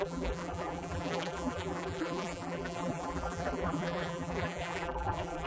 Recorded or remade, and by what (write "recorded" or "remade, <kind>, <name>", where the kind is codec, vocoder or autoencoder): remade, vocoder, BigVGAN v2